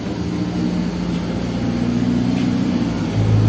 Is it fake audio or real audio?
real